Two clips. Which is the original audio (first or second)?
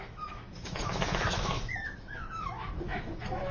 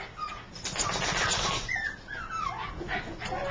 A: second